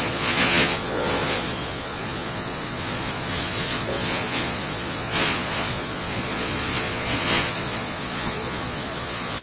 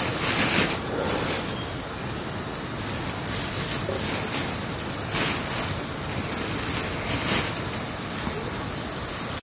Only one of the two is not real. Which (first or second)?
first